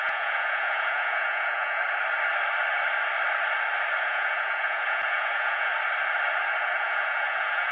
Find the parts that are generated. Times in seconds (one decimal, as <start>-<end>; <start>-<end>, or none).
0.0-1.8; 4.0-5.7; 6.6-7.7